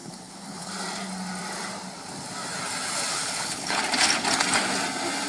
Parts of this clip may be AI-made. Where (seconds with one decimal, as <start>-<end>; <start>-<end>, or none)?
0.0-0.7; 3.1-3.8